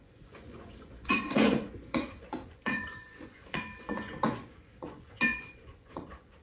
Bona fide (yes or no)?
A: no